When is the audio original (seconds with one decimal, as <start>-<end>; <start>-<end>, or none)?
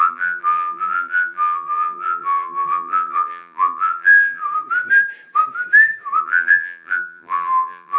4.4-6.2